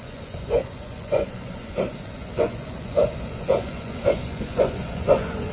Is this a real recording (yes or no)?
no